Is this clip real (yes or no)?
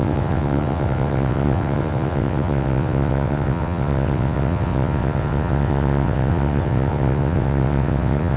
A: no